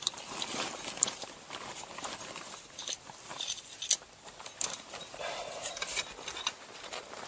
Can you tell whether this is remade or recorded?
recorded